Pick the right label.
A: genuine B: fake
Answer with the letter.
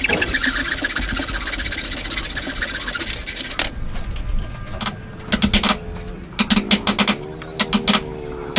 A